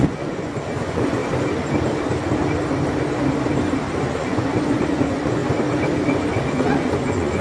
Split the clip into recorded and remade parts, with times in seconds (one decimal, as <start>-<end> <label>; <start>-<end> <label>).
0.0-1.2 remade; 1.2-4.0 recorded; 4.0-5.4 remade; 5.4-6.5 recorded; 6.5-7.4 remade